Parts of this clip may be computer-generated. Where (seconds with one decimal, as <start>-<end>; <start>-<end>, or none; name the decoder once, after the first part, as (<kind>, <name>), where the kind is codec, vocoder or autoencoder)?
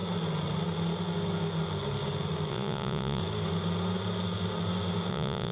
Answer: 2.5-3.2 (vocoder, Vocos); 5.1-5.5